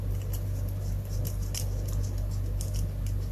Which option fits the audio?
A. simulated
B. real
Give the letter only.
B